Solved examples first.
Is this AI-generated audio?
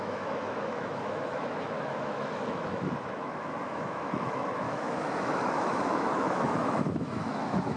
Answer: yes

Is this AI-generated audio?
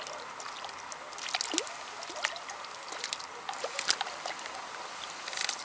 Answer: no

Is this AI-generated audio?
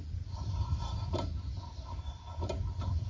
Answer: no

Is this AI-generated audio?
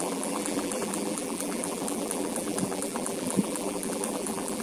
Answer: yes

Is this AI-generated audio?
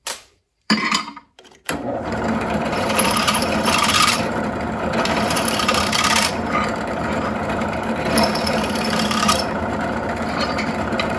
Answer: yes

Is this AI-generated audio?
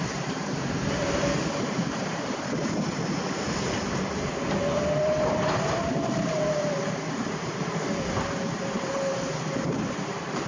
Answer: yes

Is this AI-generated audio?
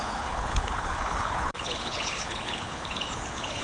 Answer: yes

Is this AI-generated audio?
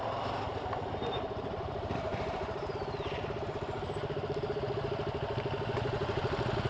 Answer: yes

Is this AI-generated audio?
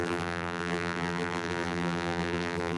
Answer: yes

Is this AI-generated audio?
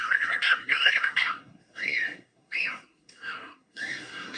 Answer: yes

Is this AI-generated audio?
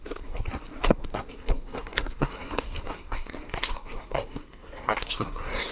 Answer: yes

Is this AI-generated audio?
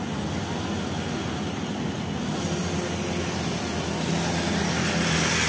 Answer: no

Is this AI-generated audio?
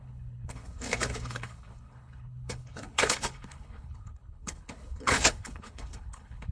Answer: yes